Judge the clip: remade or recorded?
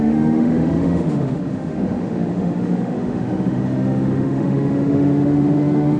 remade